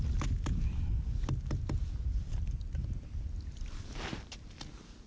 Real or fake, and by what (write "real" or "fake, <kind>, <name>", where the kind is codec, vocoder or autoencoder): real